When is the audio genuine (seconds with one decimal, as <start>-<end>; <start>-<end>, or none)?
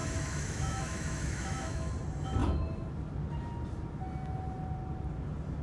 1.9-5.6